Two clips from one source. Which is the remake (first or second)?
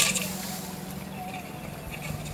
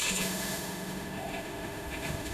second